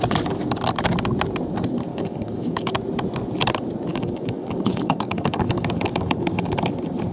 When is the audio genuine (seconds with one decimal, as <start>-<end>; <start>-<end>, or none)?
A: 0.0-1.9; 2.7-3.9; 6.5-7.1

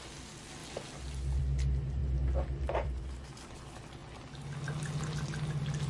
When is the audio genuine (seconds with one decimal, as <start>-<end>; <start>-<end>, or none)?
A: 0.0-2.0; 3.0-4.0; 4.5-5.9

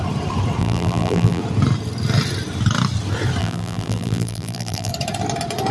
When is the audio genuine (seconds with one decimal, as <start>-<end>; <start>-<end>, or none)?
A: 0.0-0.6; 1.4-3.4; 4.9-5.7

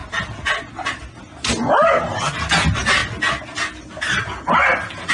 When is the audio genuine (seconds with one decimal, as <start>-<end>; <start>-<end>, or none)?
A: 0.0-5.1

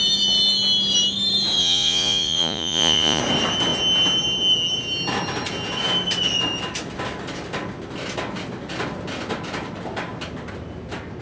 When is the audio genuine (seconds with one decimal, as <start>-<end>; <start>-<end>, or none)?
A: 0.0-1.6; 3.2-11.2